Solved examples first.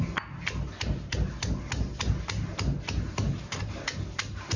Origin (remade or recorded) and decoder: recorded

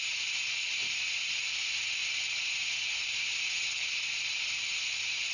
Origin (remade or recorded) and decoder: recorded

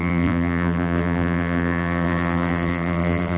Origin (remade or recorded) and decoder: remade, vocoder, BigVGAN v2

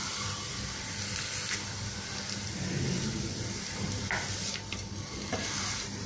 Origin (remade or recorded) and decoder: recorded